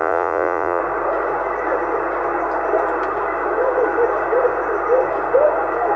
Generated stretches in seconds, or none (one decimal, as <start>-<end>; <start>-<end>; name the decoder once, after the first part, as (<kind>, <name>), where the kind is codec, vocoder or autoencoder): 0.0-0.8 (vocoder, Vocos)